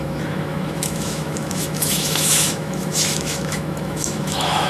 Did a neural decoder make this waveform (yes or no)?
yes